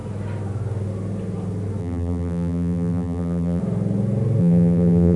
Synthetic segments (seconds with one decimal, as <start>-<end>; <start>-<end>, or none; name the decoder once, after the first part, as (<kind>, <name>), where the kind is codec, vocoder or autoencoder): 1.8-3.6 (vocoder, BigVGAN v2); 4.4-5.2

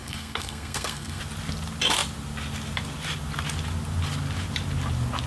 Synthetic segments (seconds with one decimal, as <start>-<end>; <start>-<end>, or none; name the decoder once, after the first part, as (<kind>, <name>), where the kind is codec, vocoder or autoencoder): 0.0-1.2 (codec, SNAC)

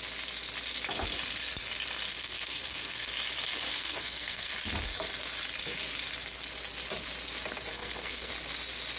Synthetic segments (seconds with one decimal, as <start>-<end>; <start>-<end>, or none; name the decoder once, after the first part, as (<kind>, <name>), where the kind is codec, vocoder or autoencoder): 2.1-3.1 (codec, SNAC); 3.7-4.5; 7.7-8.3

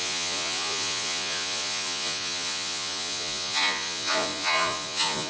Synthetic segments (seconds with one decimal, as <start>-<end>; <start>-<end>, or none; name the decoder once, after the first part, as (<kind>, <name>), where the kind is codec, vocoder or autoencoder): 0.0-5.3 (vocoder, Vocos)

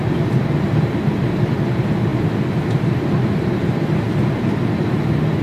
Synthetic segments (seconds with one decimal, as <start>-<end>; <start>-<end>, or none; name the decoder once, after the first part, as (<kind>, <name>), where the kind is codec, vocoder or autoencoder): none